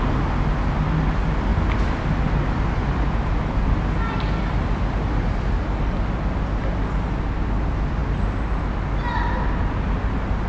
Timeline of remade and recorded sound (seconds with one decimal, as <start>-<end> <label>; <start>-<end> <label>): 0.0-10.5 recorded